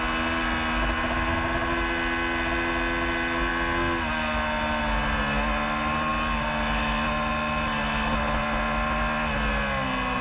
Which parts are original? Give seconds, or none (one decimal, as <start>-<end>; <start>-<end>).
0.0-10.2

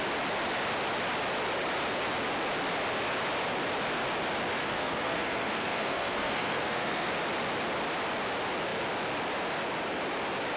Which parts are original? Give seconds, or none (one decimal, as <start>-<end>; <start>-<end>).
0.0-4.6; 7.1-10.6

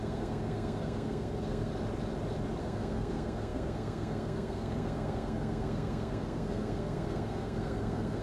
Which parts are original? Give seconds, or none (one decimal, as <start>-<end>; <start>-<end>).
1.7-2.6